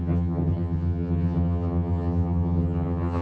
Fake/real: fake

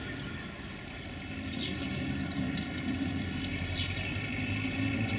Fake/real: real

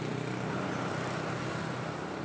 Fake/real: real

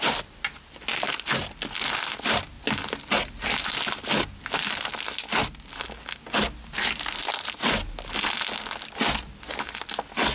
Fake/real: real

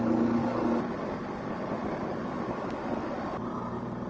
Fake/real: real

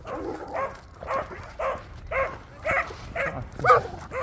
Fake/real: real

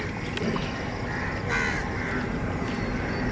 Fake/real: real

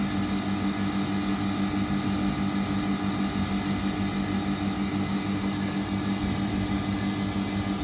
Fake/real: real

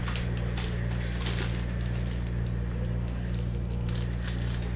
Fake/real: real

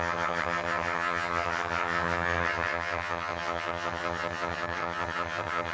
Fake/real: fake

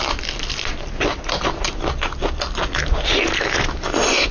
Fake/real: real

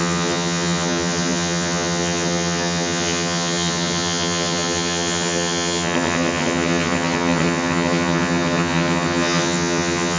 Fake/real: fake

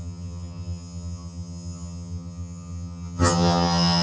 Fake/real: fake